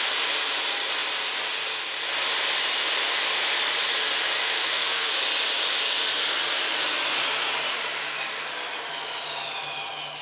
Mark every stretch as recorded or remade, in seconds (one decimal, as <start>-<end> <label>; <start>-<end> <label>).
0.0-4.4 recorded; 4.4-5.1 remade; 5.1-10.2 recorded

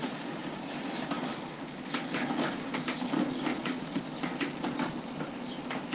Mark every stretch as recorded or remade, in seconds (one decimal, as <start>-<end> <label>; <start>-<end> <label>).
0.0-3.5 recorded; 3.5-4.0 remade; 4.0-5.9 recorded

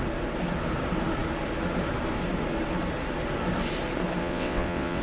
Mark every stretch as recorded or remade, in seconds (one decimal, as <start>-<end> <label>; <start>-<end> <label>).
0.0-4.2 recorded; 4.2-5.0 remade